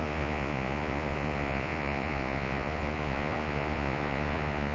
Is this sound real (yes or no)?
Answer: no